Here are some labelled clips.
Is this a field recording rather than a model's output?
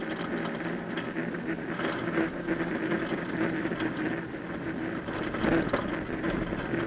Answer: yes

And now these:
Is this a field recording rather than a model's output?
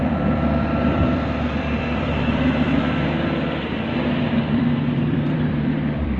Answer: no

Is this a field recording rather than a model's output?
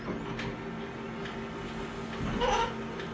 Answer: yes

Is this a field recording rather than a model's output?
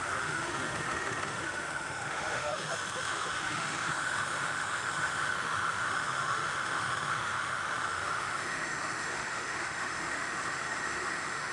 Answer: no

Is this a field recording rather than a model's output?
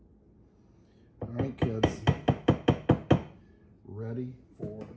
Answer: yes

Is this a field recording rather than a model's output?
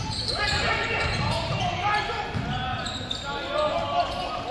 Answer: yes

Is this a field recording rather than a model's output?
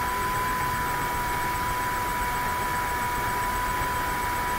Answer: yes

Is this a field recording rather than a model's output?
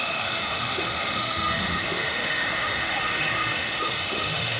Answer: no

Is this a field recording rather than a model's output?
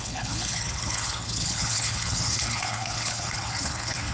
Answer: no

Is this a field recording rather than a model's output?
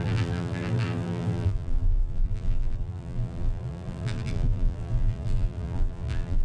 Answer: no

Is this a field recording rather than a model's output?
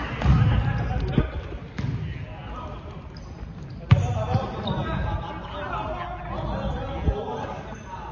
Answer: yes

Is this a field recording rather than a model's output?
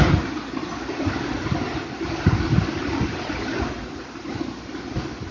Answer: yes